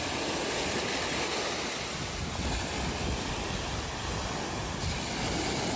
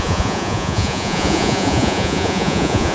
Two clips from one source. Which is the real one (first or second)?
first